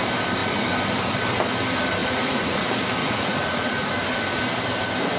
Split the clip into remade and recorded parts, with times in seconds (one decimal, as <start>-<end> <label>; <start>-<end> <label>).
0.0-2.0 recorded; 2.0-2.6 remade; 2.6-3.0 recorded; 3.0-3.9 remade; 3.9-5.2 recorded